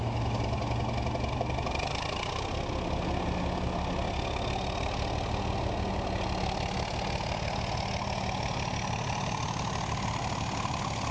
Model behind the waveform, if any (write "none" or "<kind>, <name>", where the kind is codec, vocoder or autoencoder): none